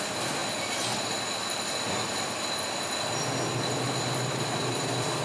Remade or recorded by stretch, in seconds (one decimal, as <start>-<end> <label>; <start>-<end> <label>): 0.0-5.2 recorded